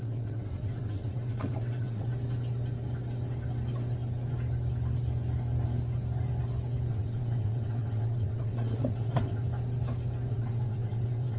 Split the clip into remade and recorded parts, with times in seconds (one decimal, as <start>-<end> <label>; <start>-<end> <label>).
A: 0.0-2.1 remade; 2.1-6.9 recorded; 6.9-9.4 remade; 9.4-10.3 recorded; 10.3-11.4 remade

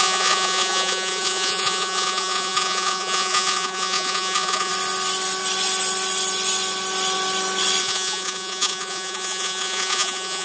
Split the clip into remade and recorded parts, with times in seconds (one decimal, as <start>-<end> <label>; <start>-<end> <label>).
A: 0.0-4.7 remade; 4.7-7.8 recorded; 7.8-10.4 remade

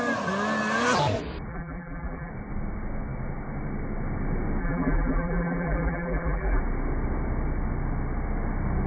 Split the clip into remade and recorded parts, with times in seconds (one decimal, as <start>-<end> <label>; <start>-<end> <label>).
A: 0.0-1.5 recorded; 1.5-2.3 remade; 2.3-4.6 recorded; 4.6-6.6 remade; 6.6-8.9 recorded

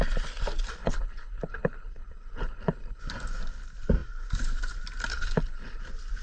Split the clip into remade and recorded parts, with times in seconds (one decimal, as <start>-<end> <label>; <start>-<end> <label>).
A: 0.0-0.8 recorded; 0.8-3.0 remade; 3.0-5.1 recorded; 5.1-5.8 remade; 5.8-6.2 recorded

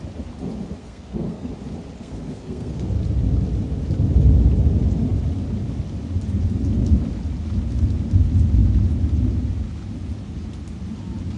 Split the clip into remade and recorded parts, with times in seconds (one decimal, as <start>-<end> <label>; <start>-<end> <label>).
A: 0.0-0.8 recorded; 0.8-1.5 remade; 1.5-2.0 recorded; 2.0-2.9 remade; 2.9-11.4 recorded

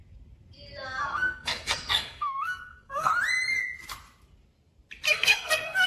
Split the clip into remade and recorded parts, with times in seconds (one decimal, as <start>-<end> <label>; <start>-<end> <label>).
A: 0.0-1.0 recorded; 1.0-3.1 remade; 3.1-5.1 recorded; 5.1-5.9 remade

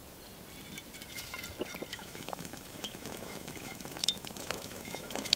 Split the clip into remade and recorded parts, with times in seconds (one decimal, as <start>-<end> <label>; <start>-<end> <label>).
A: 0.0-1.9 recorded; 1.9-5.4 remade

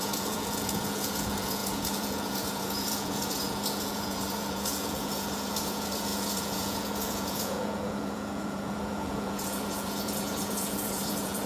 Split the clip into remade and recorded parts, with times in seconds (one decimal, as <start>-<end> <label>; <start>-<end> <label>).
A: 0.0-11.5 remade